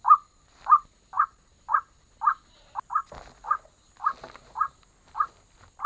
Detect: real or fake real